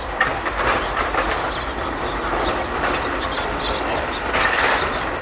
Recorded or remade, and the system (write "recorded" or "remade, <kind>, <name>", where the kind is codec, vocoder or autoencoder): recorded